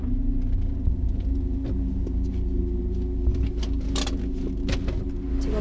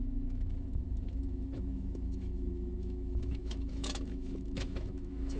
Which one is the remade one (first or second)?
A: second